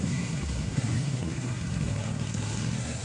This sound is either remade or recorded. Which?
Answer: remade